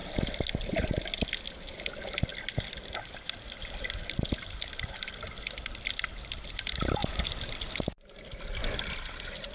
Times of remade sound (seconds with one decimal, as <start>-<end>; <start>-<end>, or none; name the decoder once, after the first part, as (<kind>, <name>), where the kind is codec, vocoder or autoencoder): 2.3-4.3 (vocoder, BigVGAN v2); 7.0-7.8